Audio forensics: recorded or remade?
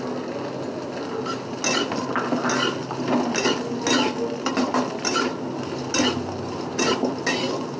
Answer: recorded